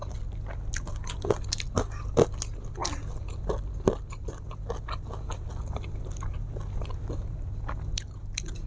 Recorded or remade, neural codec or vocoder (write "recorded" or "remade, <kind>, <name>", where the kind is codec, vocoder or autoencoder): recorded